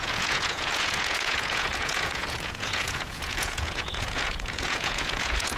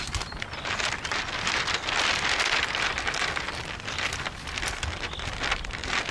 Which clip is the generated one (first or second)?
first